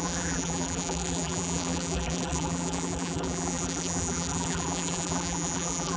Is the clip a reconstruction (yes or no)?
yes